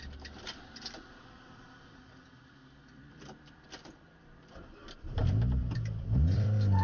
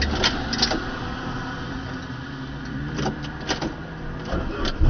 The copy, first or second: first